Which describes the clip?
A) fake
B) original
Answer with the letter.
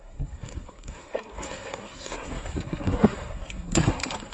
A